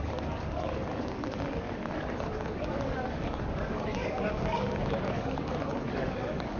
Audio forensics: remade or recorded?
remade